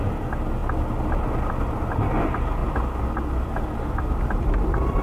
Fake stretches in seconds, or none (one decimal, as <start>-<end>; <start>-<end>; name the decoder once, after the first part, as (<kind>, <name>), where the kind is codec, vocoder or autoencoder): none